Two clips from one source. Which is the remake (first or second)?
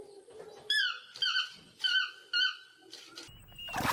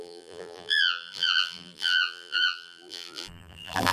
second